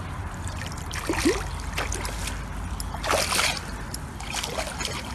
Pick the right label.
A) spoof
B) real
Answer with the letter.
B